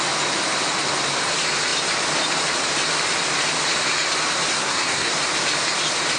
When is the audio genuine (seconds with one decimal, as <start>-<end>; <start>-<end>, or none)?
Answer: 0.0-4.5; 5.1-6.2

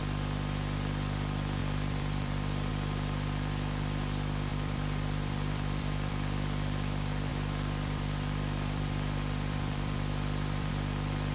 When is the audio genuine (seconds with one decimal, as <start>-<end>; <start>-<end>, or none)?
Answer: 0.0-1.6; 2.7-4.5; 6.1-7.3; 10.7-11.3

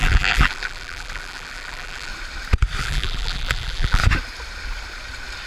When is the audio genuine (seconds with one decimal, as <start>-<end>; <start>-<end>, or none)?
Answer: 2.1-2.8; 4.0-5.5

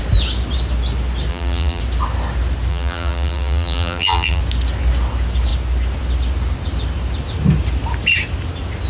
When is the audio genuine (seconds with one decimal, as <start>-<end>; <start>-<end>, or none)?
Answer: 0.0-1.3; 1.8-2.7; 4.4-8.9

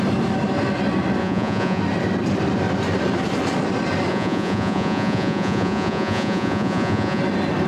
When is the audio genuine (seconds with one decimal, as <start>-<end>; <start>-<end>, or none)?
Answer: 0.0-1.2; 1.8-4.1; 7.2-7.7

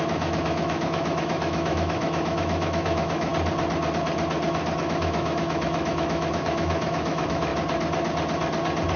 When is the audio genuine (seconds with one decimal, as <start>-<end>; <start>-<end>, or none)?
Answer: 3.3-4.8; 7.5-9.0

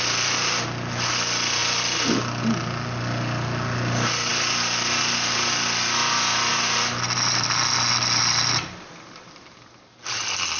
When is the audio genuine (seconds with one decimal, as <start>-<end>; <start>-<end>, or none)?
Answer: 0.0-10.6